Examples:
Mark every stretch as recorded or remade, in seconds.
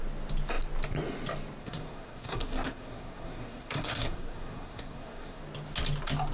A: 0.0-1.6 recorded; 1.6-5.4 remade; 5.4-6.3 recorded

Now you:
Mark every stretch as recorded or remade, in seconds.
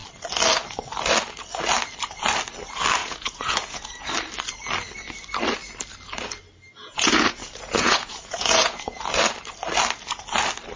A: 0.0-3.0 recorded; 3.0-4.1 remade; 4.1-6.8 recorded; 6.8-9.0 remade; 9.0-10.8 recorded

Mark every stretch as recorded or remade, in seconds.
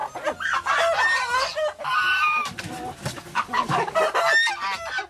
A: 0.0-3.0 recorded; 3.0-4.0 remade; 4.0-5.1 recorded